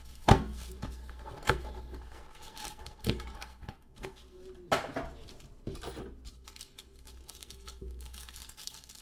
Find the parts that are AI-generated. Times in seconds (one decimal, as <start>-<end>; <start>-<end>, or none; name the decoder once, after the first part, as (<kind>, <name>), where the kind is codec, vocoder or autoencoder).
0.0-4.4 (codec, SNAC); 6.3-9.0

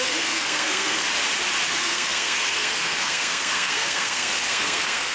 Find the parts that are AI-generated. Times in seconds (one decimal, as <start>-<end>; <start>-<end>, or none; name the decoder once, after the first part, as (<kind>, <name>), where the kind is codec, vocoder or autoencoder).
0.0-1.0 (codec, SNAC); 1.7-5.1

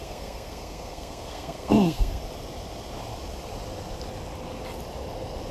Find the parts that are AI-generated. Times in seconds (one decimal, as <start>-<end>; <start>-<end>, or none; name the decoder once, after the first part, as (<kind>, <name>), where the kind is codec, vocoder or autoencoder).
0.0-2.2 (codec, SNAC)

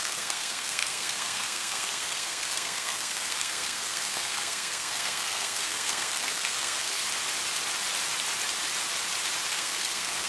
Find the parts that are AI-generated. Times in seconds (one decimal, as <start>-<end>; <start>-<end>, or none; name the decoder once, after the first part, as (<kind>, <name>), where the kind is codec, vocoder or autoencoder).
0.0-7.0 (codec, SNAC); 9.5-10.3

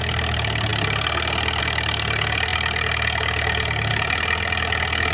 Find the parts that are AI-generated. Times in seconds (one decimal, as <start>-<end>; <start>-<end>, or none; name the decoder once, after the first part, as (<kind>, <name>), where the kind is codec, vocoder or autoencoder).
none

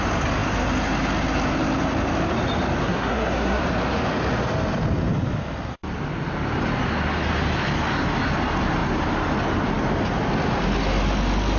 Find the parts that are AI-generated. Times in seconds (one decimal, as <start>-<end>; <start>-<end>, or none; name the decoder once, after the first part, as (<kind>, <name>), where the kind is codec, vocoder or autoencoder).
2.8-3.6 (codec, SNAC)

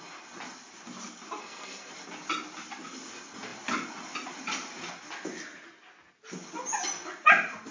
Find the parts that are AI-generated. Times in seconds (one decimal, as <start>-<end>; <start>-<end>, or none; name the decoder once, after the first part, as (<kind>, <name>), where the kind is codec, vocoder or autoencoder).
1.4-1.9 (codec, SNAC)